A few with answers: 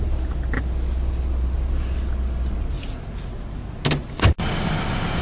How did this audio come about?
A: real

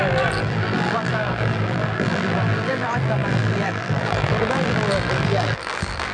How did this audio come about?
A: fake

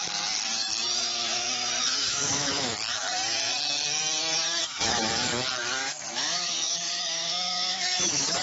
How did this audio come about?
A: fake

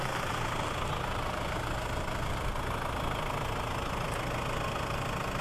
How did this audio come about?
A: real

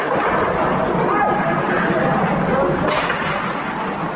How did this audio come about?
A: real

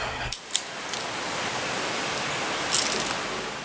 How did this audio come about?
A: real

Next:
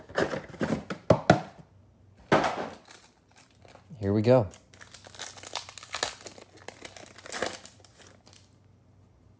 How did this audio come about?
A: real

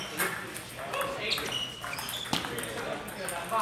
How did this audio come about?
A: real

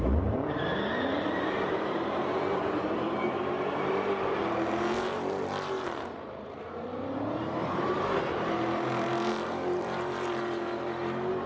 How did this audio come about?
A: fake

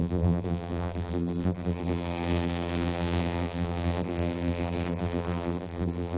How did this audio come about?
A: fake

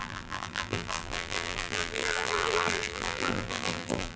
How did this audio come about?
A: fake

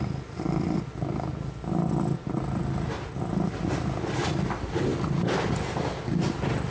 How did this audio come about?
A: real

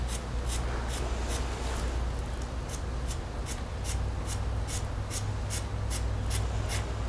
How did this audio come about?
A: real